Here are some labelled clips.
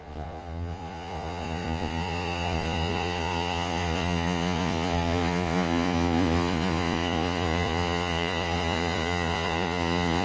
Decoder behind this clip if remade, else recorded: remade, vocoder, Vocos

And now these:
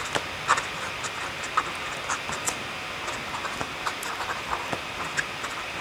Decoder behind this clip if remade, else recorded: recorded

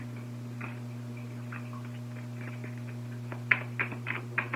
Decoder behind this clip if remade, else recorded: recorded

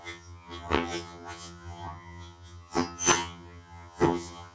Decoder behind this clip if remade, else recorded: remade, vocoder, HiFi-GAN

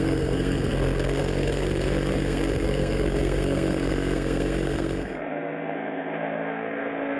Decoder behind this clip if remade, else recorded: remade, codec, SNAC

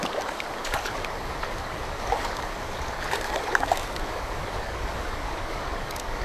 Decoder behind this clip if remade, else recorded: remade, codec, DAC